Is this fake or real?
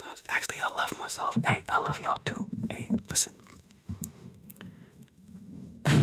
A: fake